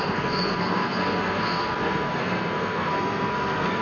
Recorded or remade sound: remade